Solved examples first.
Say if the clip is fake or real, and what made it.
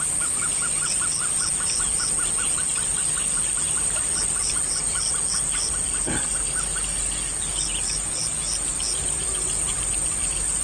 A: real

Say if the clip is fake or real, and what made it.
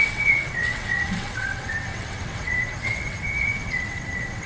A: fake, vocoder, WaveNeXt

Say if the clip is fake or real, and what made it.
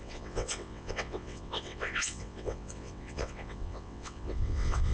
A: fake, vocoder, WaveNeXt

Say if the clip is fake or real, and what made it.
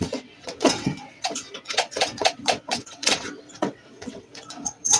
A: fake, vocoder, WaveNeXt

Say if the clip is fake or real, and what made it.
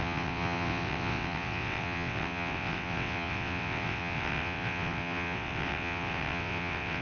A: fake, vocoder, WaveNeXt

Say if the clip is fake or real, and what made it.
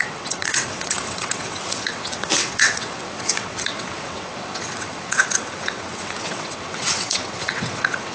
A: fake, vocoder, WaveNeXt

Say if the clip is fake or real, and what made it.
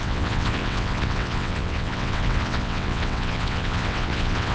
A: fake, vocoder, WaveNeXt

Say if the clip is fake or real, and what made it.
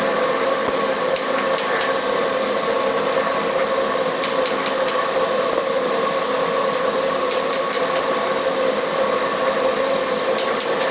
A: real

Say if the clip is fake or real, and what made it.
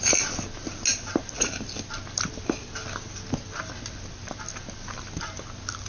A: real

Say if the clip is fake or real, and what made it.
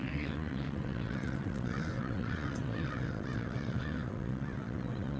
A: fake, vocoder, WaveNeXt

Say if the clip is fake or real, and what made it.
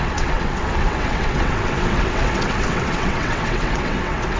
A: fake, vocoder, WaveNeXt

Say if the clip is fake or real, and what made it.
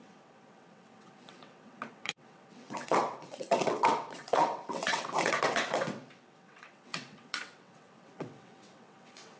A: fake, vocoder, WaveNeXt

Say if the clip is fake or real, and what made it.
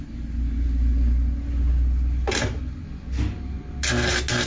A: real